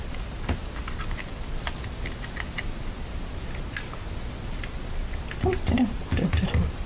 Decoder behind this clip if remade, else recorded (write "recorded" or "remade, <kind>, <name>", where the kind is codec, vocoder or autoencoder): recorded